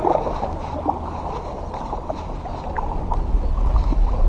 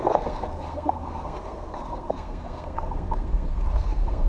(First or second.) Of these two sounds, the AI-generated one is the second